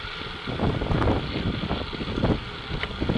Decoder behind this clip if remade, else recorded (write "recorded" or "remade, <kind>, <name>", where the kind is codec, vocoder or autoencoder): recorded